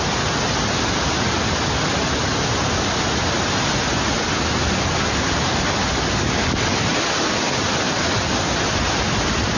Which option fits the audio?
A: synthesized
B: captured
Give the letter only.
B